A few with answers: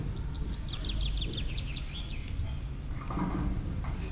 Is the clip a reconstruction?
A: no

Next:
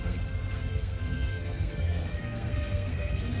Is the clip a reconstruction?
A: yes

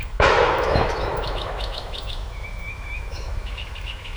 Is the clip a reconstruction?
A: yes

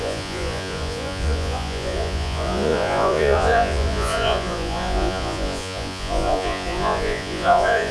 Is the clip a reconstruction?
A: yes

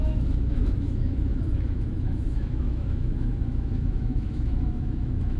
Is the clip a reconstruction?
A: yes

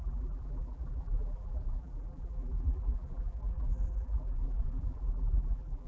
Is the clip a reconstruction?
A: yes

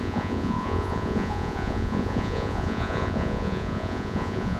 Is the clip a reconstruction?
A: yes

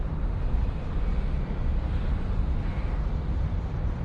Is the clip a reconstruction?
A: no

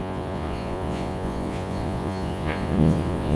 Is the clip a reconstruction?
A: yes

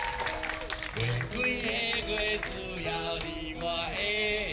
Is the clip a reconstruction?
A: no